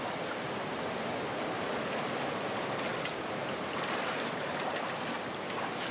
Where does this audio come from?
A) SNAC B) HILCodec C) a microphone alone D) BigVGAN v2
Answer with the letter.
C